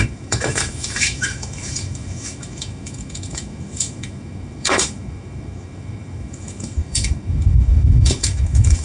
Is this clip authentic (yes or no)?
no